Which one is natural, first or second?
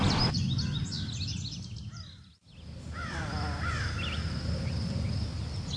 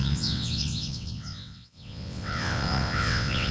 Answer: first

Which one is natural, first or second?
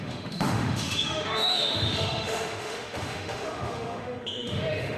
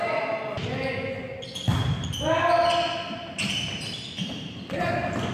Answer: second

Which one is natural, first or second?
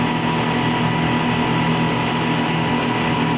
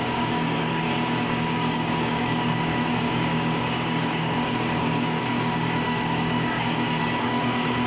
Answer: first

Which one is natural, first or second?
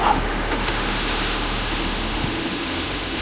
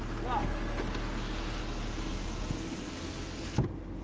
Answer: second